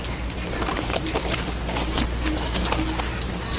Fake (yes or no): no